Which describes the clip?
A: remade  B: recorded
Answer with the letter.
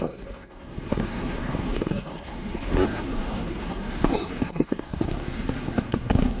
A